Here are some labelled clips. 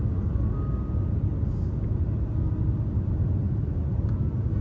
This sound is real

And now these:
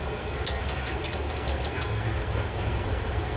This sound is fake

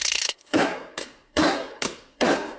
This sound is fake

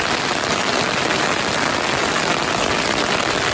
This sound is real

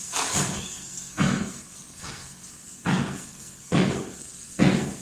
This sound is fake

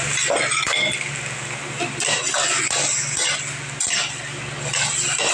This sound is real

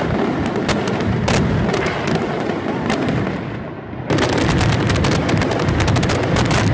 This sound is real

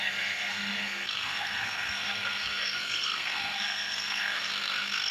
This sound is fake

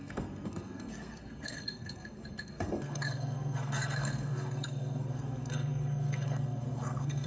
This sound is fake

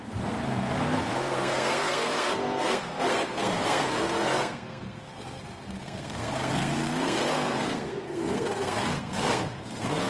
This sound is fake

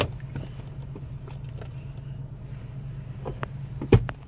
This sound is real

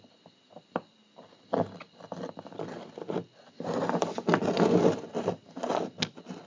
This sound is real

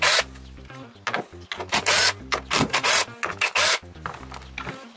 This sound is real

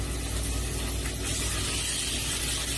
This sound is real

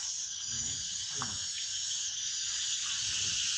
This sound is real